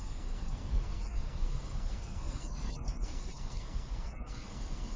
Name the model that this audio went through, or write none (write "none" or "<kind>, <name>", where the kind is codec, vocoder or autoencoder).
codec, SNAC